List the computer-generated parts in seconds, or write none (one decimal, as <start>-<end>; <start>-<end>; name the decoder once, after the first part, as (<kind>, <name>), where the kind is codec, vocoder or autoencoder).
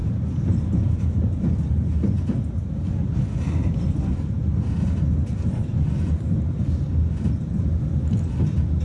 0.0-8.8 (vocoder, BigVGAN v2)